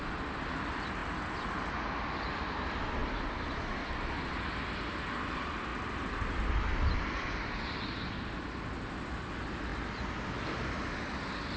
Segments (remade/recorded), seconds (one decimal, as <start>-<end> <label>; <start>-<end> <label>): 0.0-11.6 recorded